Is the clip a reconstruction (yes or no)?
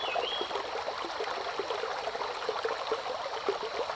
no